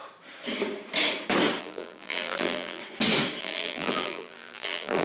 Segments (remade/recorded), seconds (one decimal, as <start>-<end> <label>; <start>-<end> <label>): 0.0-1.6 recorded; 1.6-2.8 remade; 2.8-3.4 recorded; 3.4-5.0 remade